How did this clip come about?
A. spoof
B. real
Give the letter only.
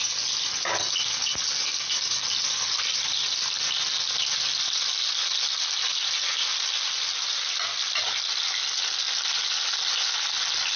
B